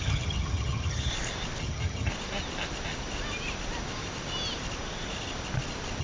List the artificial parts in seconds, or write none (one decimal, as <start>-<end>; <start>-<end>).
0.0-1.1; 1.6-2.1